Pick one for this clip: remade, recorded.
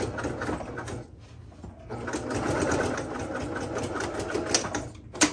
recorded